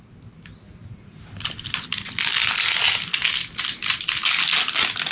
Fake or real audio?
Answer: real